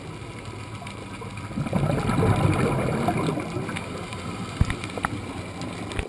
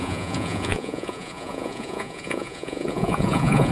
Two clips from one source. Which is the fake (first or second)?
second